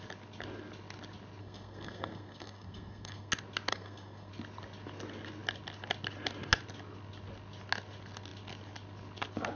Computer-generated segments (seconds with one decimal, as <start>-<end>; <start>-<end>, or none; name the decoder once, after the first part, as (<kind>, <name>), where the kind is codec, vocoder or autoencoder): 1.4-3.3 (codec, SNAC); 3.7-4.3